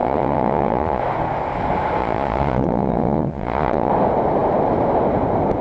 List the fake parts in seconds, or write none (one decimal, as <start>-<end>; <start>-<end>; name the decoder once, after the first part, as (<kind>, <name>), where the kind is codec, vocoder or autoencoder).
0.0-1.0 (vocoder, Vocos); 2.0-3.9